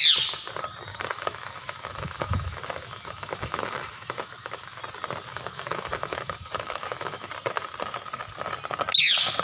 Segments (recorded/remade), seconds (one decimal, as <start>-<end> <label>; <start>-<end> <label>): 0.0-0.9 recorded; 0.9-4.8 remade; 4.8-5.3 recorded; 5.3-7.3 remade; 7.3-9.4 recorded